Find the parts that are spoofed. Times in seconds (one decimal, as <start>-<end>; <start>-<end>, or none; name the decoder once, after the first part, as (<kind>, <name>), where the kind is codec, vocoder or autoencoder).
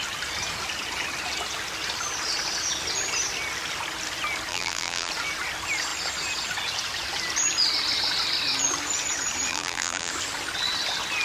4.5-5.1 (vocoder, BigVGAN v2); 9.5-10.1